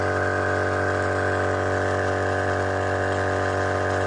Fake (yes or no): no